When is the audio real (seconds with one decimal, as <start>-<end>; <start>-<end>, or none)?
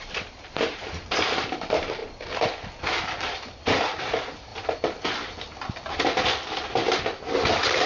2.0-2.8; 4.5-7.5